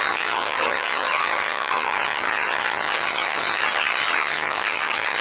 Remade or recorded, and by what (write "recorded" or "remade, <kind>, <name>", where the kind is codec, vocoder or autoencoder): remade, vocoder, HiFi-GAN